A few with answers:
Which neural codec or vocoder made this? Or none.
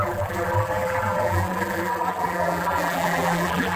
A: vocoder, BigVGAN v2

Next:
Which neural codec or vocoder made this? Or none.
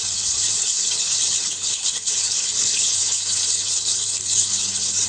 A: codec, HILCodec